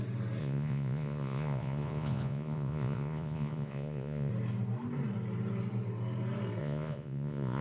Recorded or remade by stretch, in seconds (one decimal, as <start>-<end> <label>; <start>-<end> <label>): 0.0-0.4 recorded; 0.4-4.3 remade; 4.3-6.6 recorded; 6.6-7.6 remade